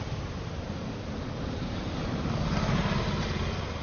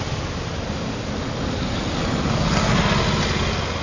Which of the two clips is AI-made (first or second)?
first